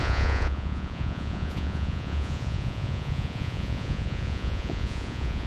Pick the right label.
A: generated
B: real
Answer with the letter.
A